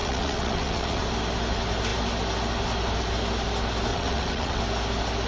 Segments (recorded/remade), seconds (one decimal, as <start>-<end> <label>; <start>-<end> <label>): 0.0-1.0 remade; 1.0-3.9 recorded; 3.9-4.6 remade; 4.6-5.3 recorded